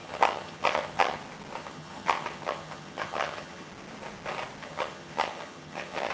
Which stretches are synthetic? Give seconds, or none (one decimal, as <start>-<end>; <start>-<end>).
0.0-1.2; 1.6-3.7; 4.6-6.1